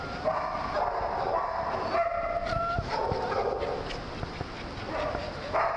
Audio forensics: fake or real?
real